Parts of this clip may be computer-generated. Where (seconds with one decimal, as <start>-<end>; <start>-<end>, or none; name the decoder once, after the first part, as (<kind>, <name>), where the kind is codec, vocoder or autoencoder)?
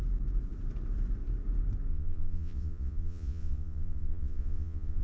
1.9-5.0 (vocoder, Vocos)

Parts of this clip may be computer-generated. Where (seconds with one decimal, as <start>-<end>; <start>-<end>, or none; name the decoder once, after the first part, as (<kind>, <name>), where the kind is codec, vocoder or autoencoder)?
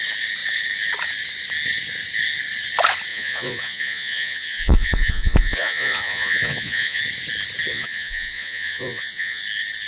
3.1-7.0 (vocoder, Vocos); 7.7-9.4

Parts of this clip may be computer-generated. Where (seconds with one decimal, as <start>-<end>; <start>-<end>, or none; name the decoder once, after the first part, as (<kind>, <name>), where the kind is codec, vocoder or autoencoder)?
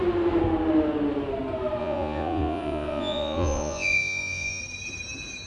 1.8-4.6 (vocoder, Vocos)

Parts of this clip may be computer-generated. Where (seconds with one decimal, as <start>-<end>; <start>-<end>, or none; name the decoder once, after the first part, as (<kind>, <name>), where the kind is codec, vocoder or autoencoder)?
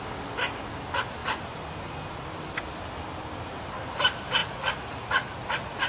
4.4-5.9 (vocoder, Vocos)